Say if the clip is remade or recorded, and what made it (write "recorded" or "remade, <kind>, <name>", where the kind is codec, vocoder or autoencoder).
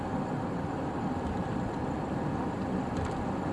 recorded